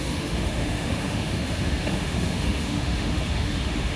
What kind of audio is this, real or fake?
fake